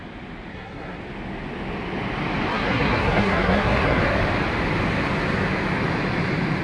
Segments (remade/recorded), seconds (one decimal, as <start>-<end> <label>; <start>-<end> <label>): 0.0-0.5 recorded; 0.5-1.0 remade; 1.0-2.5 recorded; 2.5-4.0 remade; 4.0-6.6 recorded